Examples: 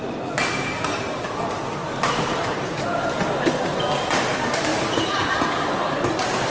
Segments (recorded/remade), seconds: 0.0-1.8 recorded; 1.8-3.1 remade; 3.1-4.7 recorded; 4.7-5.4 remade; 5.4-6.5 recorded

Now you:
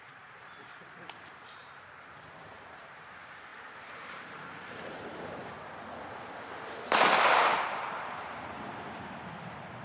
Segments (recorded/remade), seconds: 0.0-5.4 remade; 5.4-7.4 recorded; 7.4-9.8 remade